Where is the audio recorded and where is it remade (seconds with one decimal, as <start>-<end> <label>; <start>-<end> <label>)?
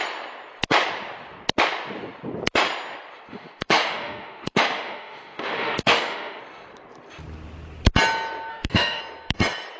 0.0-3.3 recorded; 3.3-6.4 remade; 6.4-8.5 recorded; 8.5-9.0 remade; 9.0-9.8 recorded